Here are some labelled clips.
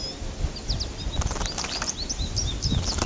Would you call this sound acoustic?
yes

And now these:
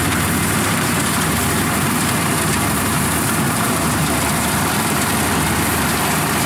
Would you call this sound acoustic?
no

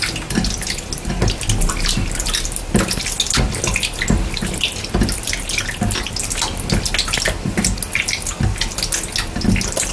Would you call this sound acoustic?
yes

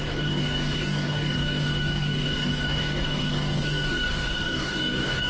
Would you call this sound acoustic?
no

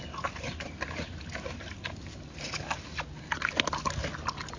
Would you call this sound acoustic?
yes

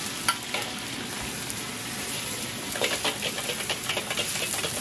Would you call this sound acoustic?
yes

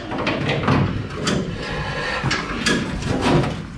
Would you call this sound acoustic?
yes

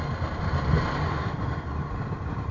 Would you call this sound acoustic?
yes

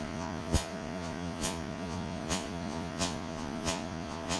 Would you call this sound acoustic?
no